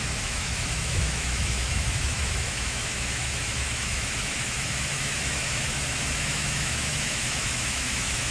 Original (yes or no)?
no